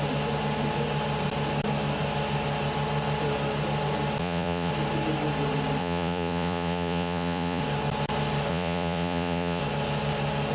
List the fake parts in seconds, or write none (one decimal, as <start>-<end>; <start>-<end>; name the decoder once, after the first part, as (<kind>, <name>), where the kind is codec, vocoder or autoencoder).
4.2-4.7 (vocoder, Vocos); 5.8-7.6; 8.5-9.6